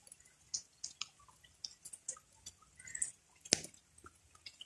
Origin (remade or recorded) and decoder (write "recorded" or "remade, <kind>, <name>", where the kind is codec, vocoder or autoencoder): recorded